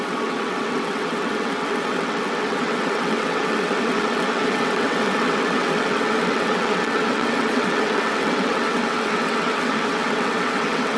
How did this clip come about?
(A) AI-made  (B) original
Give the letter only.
A